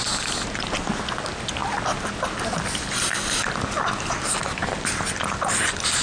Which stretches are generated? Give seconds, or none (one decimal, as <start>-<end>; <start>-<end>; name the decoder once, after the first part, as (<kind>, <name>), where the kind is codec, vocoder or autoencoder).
none